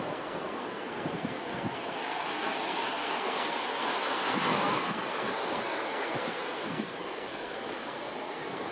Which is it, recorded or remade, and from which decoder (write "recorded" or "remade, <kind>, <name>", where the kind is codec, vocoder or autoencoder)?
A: remade, codec, SNAC